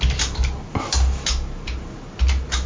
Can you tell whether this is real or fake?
real